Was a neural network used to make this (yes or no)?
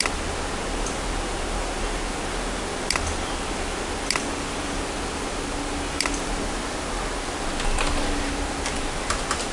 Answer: no